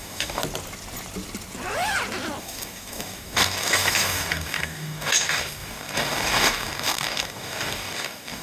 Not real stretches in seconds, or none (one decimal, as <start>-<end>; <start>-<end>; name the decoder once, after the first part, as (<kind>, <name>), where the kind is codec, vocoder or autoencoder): 0.0-0.4 (codec, DAC); 2.4-8.4